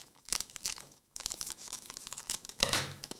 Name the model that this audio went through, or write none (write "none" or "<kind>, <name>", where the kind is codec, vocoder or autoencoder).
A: autoencoder, DAC-VAE